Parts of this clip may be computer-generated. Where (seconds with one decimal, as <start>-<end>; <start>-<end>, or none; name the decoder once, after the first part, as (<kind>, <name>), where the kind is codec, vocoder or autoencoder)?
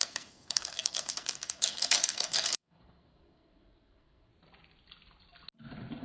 0.0-4.3 (codec, SNAC)